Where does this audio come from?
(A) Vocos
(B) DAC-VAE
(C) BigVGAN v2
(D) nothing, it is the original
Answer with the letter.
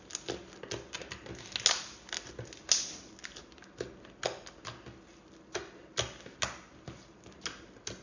D